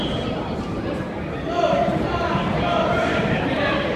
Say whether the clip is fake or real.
fake